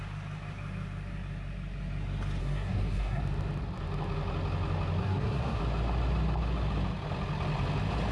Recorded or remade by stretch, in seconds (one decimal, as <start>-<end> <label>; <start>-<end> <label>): 0.0-2.4 recorded; 2.4-3.2 remade; 3.2-5.0 recorded; 5.0-5.6 remade; 5.6-8.1 recorded